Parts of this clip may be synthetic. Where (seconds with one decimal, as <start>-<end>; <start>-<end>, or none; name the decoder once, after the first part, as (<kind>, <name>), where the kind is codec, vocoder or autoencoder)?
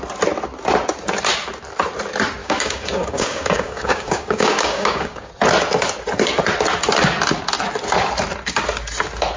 2.4-5.3 (codec, DAC)